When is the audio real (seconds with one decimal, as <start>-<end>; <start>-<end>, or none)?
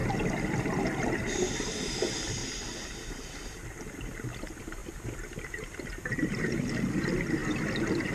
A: 1.9-2.4; 4.1-8.1